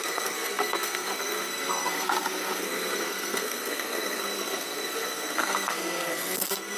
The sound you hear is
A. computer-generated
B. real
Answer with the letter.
A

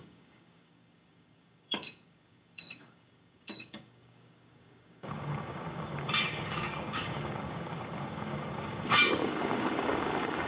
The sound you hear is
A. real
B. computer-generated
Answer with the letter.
B